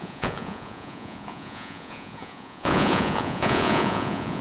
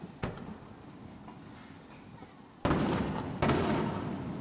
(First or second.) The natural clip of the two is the second